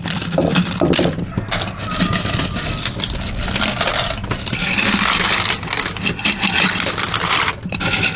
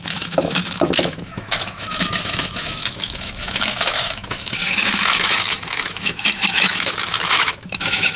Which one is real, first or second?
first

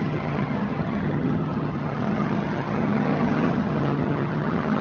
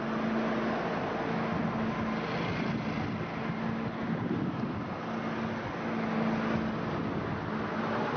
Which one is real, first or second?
second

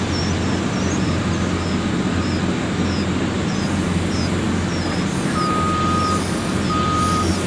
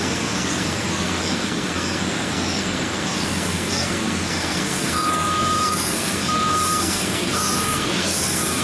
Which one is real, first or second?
first